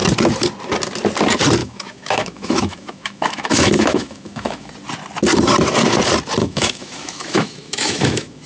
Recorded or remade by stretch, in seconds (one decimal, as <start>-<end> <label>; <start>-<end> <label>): 0.0-1.6 recorded; 1.6-4.7 remade; 4.7-6.4 recorded; 6.4-8.5 remade